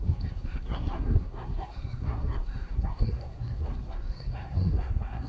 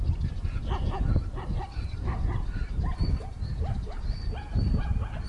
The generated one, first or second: first